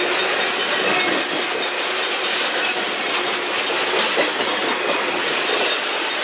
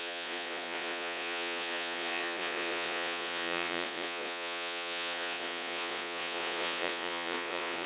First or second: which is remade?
second